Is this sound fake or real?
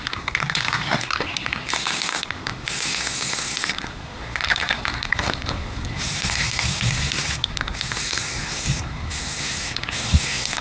fake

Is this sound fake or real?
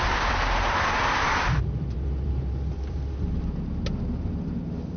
fake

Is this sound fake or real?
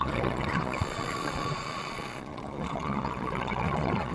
fake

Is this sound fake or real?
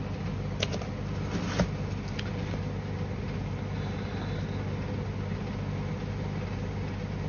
real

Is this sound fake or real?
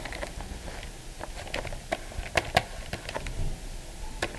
real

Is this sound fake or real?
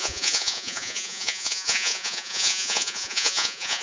fake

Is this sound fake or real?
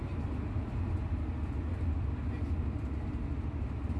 real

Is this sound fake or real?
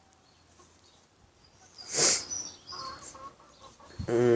real